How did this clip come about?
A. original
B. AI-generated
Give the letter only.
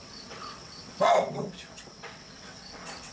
B